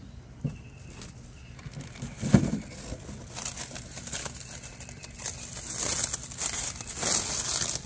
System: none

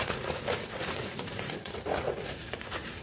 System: vocoder, Vocos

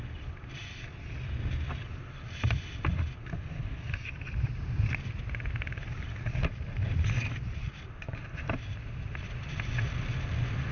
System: none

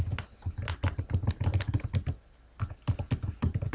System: none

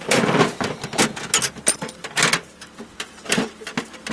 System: none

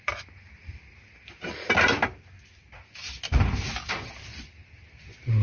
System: none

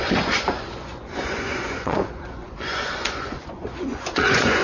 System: vocoder, Vocos